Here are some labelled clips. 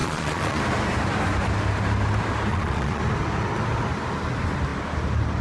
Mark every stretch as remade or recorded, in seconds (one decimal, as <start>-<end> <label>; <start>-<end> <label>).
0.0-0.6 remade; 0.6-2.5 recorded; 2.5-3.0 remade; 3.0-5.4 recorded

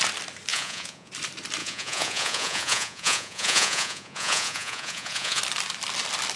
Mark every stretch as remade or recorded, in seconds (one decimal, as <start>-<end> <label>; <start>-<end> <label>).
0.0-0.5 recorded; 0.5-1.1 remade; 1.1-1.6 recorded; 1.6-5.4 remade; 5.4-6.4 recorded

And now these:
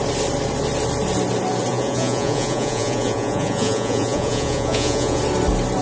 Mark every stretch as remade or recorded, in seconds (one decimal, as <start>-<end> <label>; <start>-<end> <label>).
0.0-1.7 recorded; 1.7-5.2 remade; 5.2-5.8 recorded

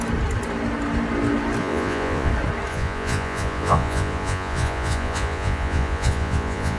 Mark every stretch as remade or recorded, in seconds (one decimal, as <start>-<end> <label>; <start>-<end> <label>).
0.0-1.6 recorded; 1.6-2.3 remade; 2.3-2.7 recorded; 2.7-6.8 remade

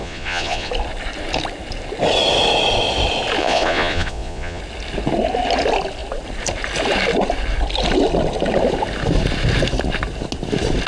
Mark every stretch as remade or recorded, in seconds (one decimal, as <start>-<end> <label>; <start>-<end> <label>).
0.0-0.7 remade; 0.7-3.4 recorded; 3.4-4.6 remade; 4.6-10.9 recorded